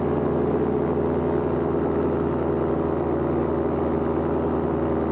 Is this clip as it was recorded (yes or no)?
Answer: yes